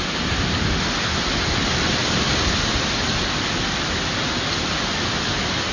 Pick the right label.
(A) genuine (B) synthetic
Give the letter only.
A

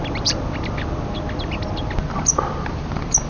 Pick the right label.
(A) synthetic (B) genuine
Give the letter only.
B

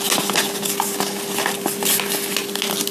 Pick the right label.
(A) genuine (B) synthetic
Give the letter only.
A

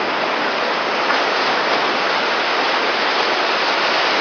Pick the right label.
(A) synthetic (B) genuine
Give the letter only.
B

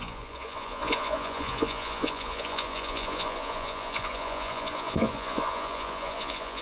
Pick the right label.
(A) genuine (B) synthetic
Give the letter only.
B